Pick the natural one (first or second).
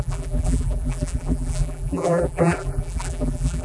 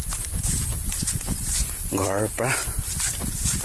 second